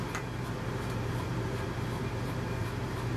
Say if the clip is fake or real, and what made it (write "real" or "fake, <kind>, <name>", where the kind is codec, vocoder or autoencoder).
fake, vocoder, BigVGAN v2